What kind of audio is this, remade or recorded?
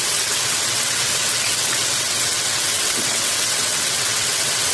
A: remade